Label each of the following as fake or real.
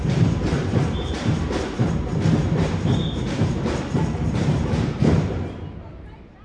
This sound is fake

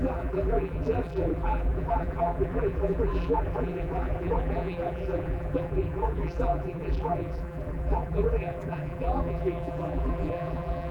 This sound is fake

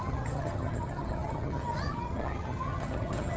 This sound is fake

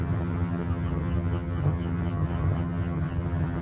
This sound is fake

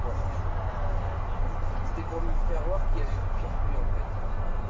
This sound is real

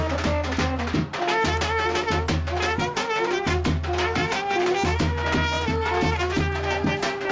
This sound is real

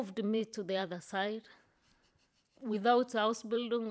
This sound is fake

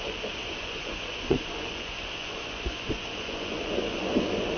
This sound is fake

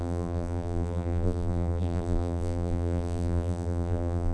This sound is fake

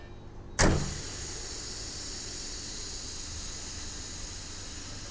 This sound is real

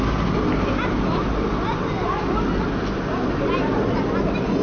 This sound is real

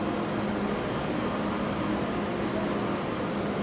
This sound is real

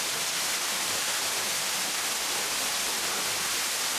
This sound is real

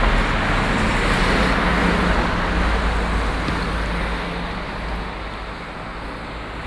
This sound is real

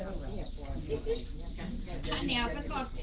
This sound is real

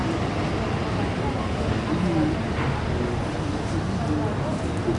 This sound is real